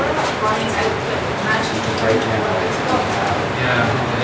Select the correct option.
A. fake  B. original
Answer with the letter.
B